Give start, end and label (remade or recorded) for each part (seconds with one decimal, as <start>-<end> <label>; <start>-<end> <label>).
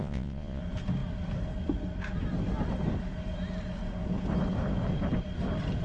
0.0-0.6 remade; 0.6-5.8 recorded